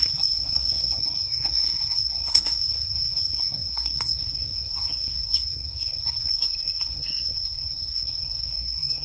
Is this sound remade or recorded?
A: remade